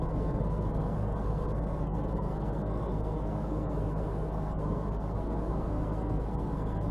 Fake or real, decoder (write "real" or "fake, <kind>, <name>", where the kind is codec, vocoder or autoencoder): fake, codec, SNAC